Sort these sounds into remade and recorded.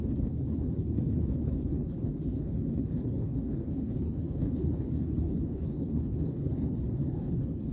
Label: remade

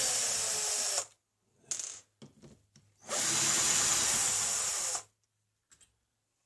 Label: recorded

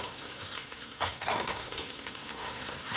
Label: remade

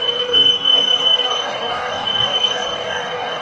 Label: remade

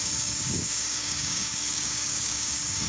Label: remade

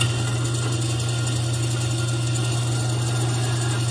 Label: recorded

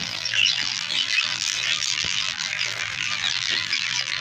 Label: remade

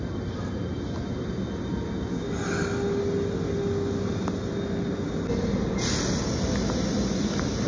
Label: recorded